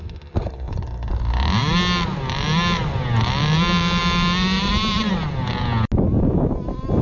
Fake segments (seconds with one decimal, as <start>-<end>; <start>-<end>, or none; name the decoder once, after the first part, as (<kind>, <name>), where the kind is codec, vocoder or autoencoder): none